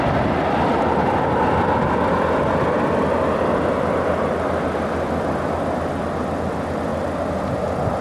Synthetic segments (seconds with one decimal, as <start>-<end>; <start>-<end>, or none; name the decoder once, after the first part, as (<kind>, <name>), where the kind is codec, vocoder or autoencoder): none